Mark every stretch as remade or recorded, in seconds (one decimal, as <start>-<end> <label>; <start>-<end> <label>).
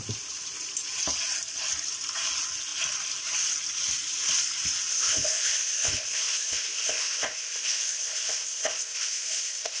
0.0-4.9 recorded; 4.9-9.8 remade